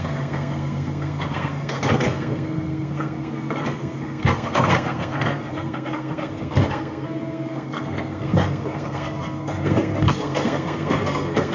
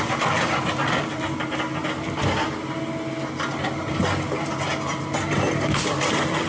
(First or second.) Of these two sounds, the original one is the second